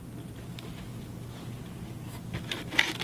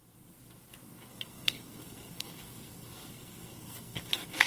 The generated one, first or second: second